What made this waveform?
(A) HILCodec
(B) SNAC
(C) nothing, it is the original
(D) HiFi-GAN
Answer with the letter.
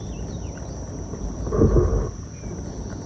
C